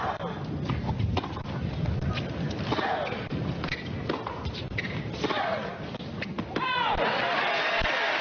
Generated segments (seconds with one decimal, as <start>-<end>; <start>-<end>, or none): none